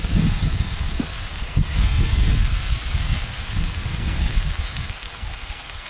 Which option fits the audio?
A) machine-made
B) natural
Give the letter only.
A